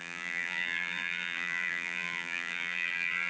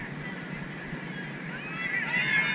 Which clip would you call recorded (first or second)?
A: second